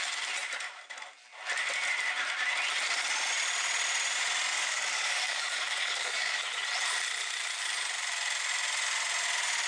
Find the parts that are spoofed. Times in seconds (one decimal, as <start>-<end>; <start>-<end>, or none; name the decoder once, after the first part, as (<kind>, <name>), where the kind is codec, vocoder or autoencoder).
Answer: 4.5-6.4 (codec, DAC)